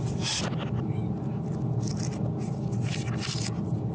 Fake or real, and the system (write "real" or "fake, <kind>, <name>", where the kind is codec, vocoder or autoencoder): real